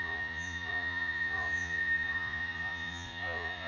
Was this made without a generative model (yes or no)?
no